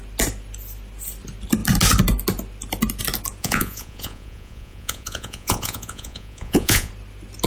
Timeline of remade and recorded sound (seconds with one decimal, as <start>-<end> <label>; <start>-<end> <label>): 0.0-3.4 recorded; 3.4-6.9 remade; 6.9-7.5 recorded